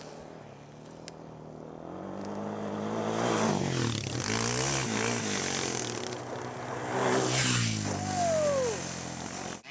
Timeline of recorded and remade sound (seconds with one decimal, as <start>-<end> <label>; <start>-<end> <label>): 0.0-9.7 recorded